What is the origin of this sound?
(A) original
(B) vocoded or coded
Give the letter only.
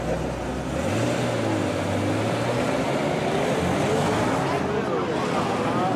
A